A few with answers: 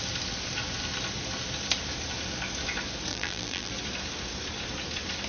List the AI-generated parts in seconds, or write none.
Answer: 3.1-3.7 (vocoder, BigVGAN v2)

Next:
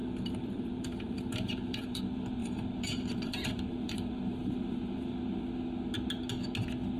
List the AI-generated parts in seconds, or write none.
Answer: 0.0-2.0 (vocoder, BigVGAN v2); 2.4-5.2

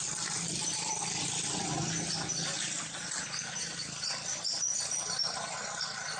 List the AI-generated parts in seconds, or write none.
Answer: 4.5-5.8 (vocoder, BigVGAN v2)